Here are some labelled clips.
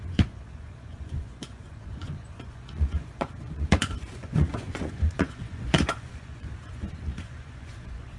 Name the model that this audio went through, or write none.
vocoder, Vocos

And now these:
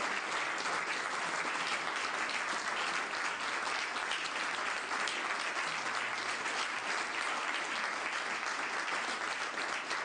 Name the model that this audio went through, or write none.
none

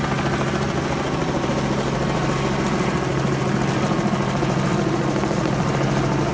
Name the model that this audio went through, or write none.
none